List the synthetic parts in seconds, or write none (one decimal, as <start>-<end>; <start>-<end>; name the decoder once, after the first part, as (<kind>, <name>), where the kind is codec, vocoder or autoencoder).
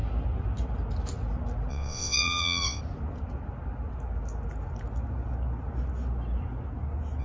1.7-2.8 (vocoder, WaveNeXt)